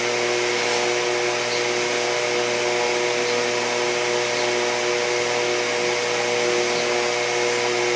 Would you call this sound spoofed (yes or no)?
no